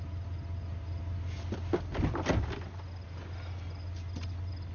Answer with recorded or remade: recorded